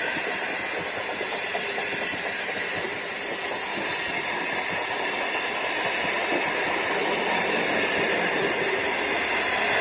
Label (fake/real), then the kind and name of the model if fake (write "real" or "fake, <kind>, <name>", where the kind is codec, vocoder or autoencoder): real